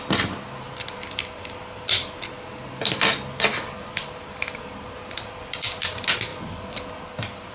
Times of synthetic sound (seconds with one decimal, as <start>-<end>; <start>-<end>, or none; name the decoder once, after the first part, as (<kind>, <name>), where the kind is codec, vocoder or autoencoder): 6.3-6.9 (vocoder, BigVGAN v2)